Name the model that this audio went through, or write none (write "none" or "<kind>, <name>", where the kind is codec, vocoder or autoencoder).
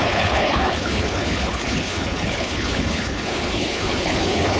codec, HILCodec